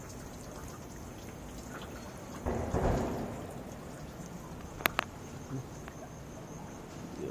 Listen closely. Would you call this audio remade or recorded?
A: recorded